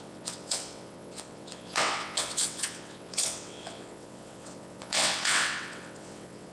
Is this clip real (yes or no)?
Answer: no